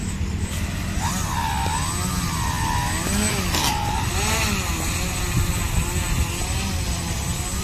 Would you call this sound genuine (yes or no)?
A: yes